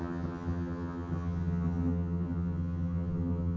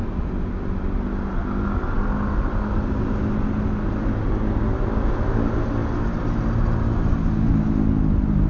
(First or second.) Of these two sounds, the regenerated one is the first